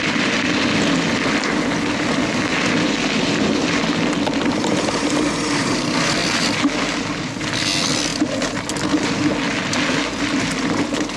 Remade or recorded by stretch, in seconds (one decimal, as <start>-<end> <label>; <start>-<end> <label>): 0.0-11.2 recorded